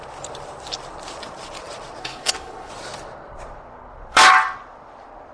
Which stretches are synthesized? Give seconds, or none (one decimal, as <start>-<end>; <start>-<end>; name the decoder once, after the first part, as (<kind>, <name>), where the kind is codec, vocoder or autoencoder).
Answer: 2.0-2.7 (codec, HILCodec)